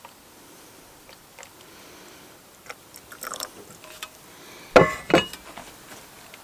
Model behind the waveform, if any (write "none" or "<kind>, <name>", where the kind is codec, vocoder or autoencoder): none